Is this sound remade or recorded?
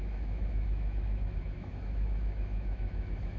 remade